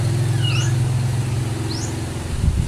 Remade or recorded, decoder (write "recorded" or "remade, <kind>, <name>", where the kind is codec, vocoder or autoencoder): recorded